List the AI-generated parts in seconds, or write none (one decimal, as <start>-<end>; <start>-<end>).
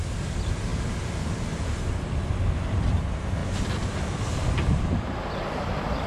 0.7-2.3; 3.4-4.9